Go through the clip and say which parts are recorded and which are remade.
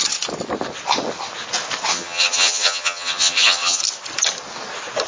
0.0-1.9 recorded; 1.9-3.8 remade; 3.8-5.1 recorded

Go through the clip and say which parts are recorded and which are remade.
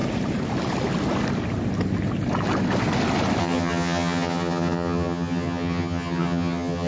0.0-3.4 recorded; 3.4-6.9 remade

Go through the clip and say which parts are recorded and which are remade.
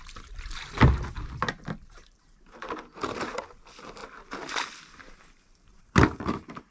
0.0-6.7 recorded